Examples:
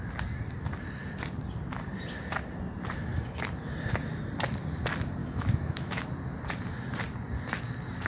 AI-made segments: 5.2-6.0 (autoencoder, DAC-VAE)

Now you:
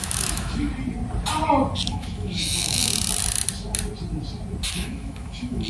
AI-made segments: 0.0-0.7 (autoencoder, DAC-VAE); 1.9-2.9; 4.7-5.7

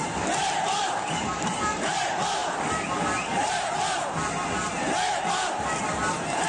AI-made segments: 1.2-2.0 (vocoder, BigVGAN v2)